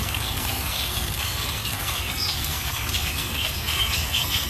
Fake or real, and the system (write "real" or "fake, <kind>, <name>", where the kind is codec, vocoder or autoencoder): fake, codec, SNAC